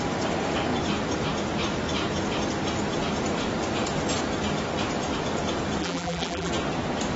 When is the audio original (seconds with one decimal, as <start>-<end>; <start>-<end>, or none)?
0.0-5.8; 6.5-7.2